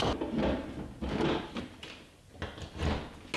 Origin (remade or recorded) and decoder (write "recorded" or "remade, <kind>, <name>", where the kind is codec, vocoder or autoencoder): recorded